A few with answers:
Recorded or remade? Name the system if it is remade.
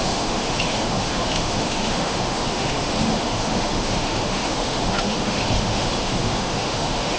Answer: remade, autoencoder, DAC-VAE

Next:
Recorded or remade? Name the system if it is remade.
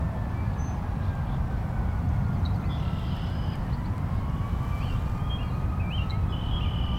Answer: recorded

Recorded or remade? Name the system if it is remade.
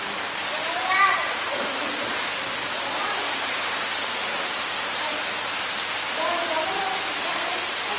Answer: recorded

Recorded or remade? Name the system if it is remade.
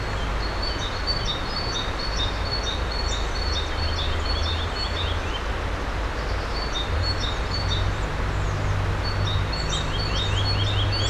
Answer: recorded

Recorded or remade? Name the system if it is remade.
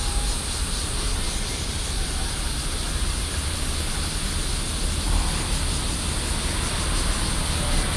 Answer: recorded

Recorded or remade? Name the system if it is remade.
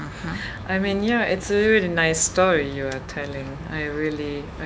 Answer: remade, autoencoder, DAC-VAE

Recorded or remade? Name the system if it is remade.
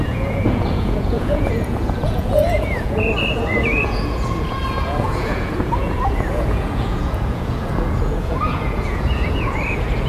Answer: remade, vocoder, Vocos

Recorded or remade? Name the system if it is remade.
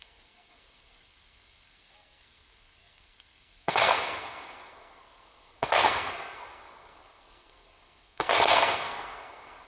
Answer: remade, codec, SNAC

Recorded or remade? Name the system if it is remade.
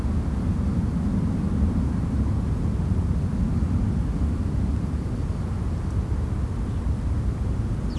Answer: recorded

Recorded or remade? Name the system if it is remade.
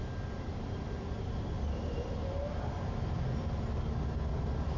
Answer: recorded